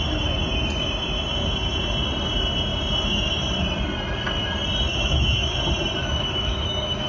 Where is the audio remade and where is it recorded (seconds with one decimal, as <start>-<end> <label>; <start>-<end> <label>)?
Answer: 0.0-4.9 recorded; 4.9-5.6 remade; 5.6-6.0 recorded; 6.0-7.1 remade